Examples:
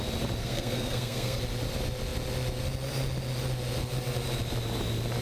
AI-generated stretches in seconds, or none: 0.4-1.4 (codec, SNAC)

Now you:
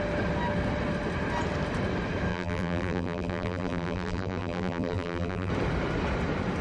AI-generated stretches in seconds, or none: 2.3-5.5 (vocoder, BigVGAN v2)

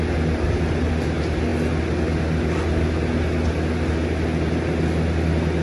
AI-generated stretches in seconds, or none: none

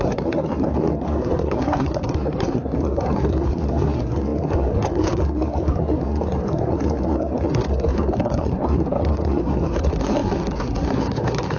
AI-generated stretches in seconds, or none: 0.0-11.6 (codec, SNAC)

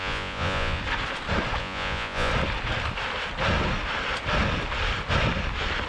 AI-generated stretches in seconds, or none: 0.0-0.8 (vocoder, Vocos); 1.6-2.3

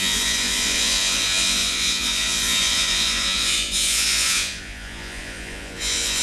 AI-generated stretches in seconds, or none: 0.0-6.2 (vocoder, Vocos)

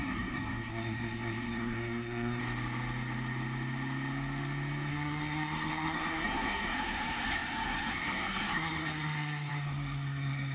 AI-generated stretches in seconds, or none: 0.0-2.4 (codec, SNAC); 4.9-10.5

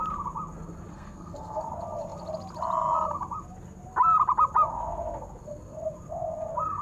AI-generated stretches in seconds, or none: 0.9-1.6 (codec, SNAC)